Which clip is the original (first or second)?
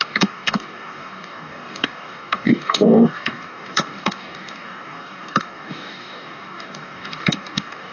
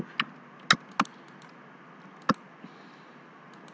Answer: second